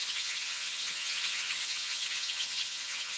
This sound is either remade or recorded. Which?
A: remade